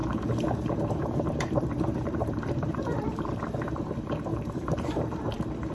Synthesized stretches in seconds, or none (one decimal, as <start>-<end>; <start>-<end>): 0.0-3.2; 4.3-5.3